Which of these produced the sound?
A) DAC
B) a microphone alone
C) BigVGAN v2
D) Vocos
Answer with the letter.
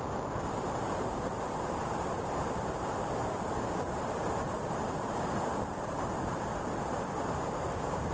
C